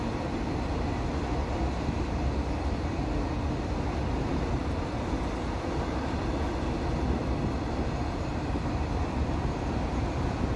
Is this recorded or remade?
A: recorded